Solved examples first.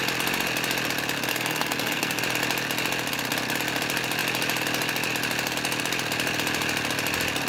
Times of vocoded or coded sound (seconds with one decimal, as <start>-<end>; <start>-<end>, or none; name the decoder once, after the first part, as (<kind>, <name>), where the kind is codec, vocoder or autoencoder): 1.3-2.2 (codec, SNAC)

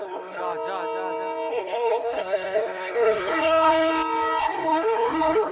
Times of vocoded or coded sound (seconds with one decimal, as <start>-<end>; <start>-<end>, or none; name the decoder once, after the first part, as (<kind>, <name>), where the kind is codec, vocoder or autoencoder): 0.0-0.4 (codec, SNAC); 1.5-3.9; 4.4-5.5

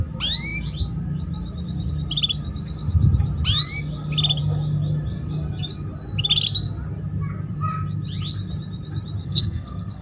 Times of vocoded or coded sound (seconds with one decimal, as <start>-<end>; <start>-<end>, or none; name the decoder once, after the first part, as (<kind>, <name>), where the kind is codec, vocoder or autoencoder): 9.2-10.0 (codec, SNAC)